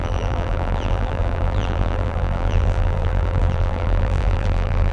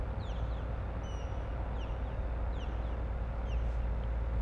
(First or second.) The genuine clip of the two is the second